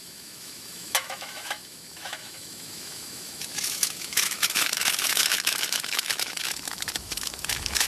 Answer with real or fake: fake